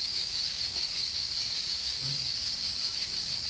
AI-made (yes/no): yes